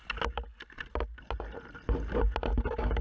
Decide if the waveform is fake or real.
real